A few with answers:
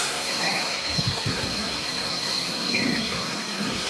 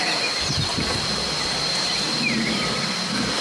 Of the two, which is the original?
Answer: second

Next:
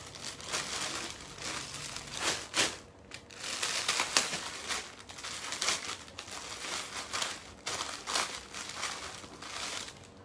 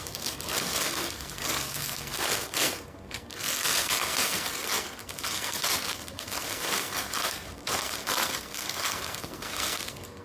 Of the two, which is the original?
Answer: first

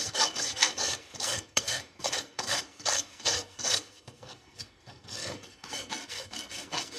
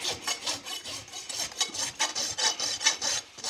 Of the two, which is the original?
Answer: second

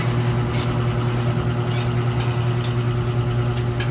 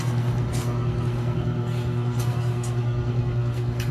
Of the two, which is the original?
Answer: first